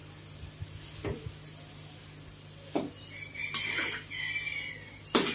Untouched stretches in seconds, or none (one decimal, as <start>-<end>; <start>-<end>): 0.0-5.3